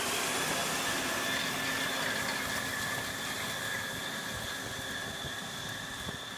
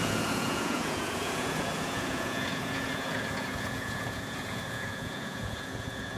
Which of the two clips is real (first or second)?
first